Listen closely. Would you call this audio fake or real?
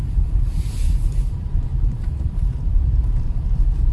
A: fake